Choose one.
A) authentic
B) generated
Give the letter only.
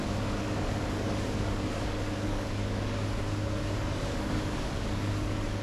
B